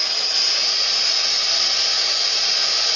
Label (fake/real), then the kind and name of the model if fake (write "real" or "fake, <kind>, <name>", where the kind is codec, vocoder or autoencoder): real